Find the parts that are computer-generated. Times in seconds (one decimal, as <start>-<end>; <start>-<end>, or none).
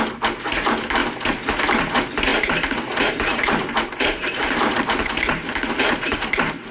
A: 0.0-1.0; 1.9-6.7